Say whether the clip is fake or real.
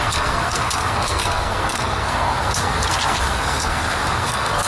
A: fake